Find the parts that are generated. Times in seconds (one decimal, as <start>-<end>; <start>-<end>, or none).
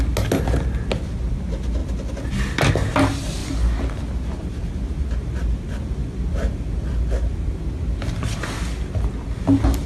none